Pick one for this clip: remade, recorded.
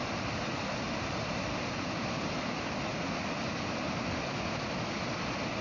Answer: recorded